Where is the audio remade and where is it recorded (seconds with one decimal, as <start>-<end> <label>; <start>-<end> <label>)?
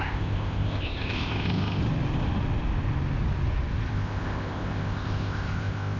0.0-1.8 remade; 1.8-3.9 recorded; 3.9-6.0 remade